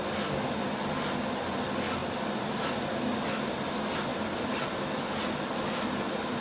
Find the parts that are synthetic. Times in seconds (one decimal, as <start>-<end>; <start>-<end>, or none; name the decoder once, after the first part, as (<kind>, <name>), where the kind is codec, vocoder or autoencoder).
none